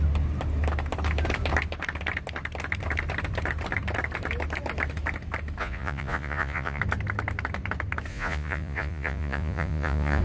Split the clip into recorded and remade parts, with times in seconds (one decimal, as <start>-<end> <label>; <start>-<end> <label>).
0.0-5.6 recorded; 5.6-6.8 remade; 6.8-8.1 recorded; 8.1-10.2 remade